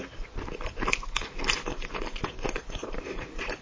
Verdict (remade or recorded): recorded